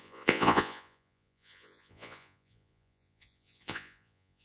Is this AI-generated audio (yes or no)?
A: yes